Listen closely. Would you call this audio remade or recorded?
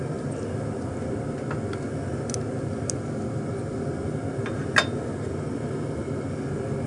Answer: recorded